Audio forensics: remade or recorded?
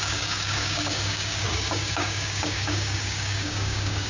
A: remade